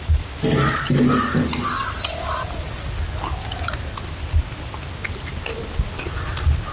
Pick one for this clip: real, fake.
real